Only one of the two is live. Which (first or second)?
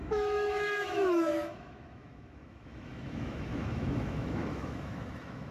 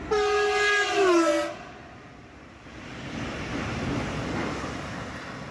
second